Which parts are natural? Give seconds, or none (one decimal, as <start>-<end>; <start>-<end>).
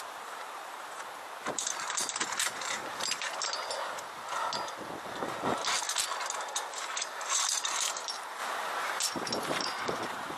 3.4-7.0